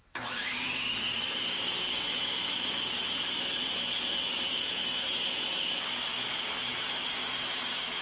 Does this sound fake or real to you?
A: fake